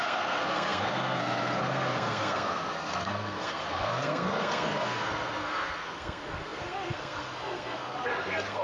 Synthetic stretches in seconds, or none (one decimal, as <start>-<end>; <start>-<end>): 0.0-8.6